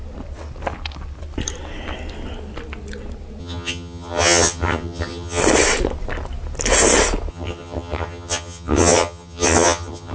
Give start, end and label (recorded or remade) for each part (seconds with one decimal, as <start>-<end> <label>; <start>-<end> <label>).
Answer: 0.0-3.4 recorded; 3.4-5.4 remade; 5.4-7.3 recorded; 7.3-10.1 remade